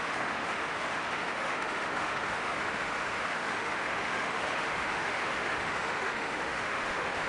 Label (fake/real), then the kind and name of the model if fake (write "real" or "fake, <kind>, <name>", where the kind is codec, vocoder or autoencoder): fake, autoencoder, DAC-VAE